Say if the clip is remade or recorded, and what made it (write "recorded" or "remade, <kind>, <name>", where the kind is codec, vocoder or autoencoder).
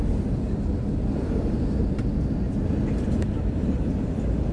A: recorded